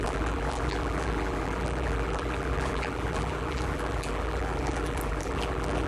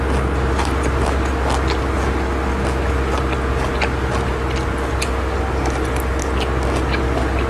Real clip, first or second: second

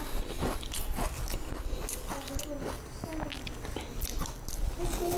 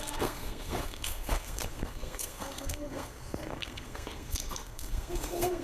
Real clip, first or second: first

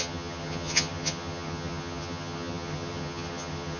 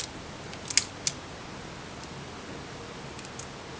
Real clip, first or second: second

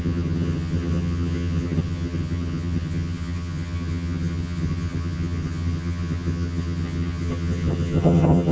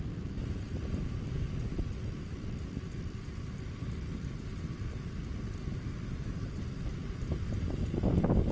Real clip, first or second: second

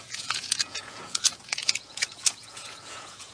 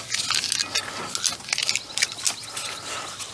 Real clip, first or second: second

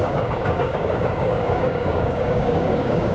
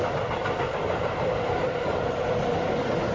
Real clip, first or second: second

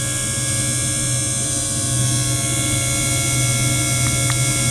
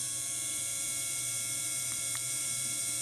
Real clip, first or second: first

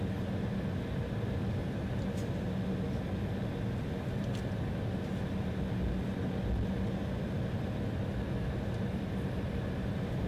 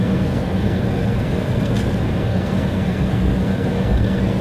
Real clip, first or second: first